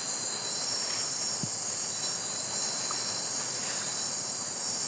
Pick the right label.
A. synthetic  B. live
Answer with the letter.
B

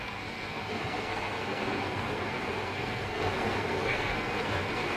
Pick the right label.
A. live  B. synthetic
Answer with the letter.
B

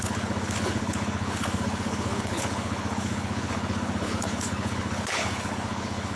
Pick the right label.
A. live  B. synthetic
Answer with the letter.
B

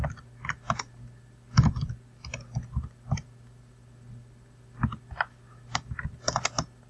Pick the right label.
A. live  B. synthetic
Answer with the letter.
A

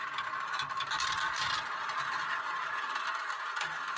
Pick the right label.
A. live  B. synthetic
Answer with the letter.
A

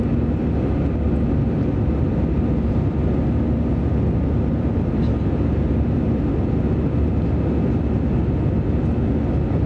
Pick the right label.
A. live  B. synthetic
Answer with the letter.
A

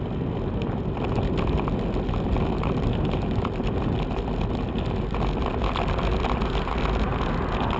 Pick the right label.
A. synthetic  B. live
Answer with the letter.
B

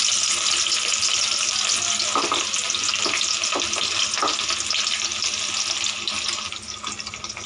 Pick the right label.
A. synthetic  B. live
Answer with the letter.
B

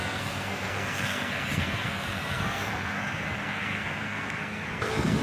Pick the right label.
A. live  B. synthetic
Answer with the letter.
B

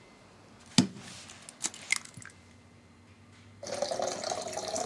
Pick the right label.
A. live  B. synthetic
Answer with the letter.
A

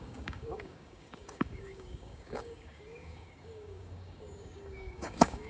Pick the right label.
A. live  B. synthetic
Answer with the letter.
B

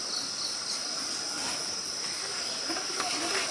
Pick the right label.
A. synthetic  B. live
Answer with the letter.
B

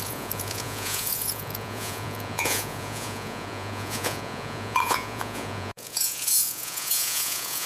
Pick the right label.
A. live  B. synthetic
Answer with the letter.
B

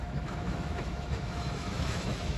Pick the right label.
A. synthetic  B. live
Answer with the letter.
A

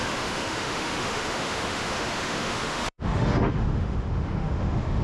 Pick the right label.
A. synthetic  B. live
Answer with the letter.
A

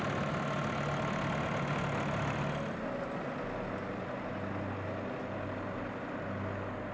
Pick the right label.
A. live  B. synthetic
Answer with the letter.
A